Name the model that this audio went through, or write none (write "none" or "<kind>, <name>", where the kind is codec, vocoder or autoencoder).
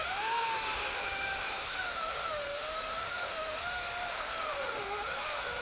autoencoder, DAC-VAE